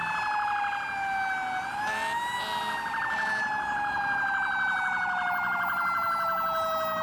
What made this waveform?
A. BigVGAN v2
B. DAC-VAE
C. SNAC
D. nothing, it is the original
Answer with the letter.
D